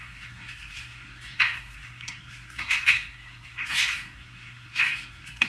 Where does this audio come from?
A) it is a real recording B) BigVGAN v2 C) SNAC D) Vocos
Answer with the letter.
C